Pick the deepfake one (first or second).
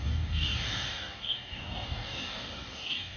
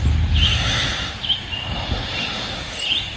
first